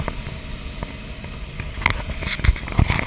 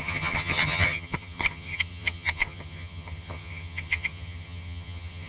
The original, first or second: first